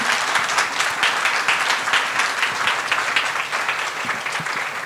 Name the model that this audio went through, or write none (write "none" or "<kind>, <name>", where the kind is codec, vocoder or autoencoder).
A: none